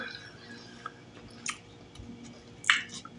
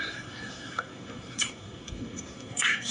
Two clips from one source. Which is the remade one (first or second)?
second